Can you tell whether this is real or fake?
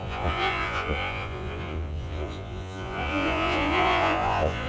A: fake